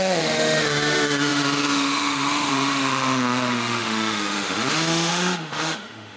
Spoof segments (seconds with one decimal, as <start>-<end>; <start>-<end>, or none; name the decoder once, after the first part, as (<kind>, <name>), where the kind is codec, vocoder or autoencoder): 0.0-6.2 (autoencoder, DAC-VAE)